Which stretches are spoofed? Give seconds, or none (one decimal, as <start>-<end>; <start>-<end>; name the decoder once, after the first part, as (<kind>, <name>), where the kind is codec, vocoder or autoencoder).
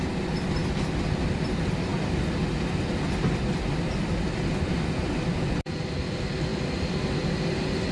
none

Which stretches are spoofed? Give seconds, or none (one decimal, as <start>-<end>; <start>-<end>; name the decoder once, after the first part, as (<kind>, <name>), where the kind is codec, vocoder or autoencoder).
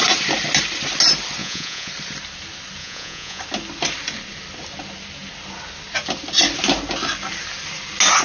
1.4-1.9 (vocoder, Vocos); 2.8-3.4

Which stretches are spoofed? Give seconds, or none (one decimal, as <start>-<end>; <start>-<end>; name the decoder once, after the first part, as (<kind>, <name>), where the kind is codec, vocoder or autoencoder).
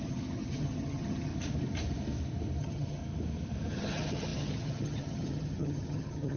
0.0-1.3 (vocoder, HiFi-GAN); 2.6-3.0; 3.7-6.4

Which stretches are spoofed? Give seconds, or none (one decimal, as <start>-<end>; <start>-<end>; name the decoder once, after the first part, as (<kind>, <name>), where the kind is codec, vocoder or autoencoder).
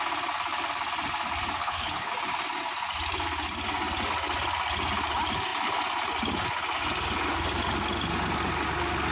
1.6-2.1 (codec, HILCodec)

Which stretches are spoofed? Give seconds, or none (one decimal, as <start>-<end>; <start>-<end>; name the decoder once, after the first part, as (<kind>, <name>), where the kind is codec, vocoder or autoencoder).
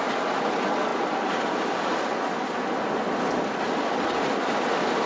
none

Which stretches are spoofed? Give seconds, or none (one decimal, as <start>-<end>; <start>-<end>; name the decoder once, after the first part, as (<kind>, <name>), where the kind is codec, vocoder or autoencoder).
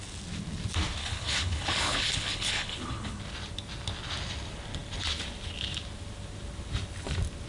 1.0-3.2 (codec, HILCodec)